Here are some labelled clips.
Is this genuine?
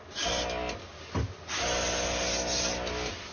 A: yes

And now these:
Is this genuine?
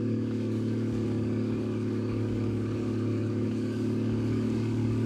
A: no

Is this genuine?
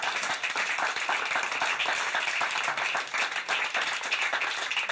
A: yes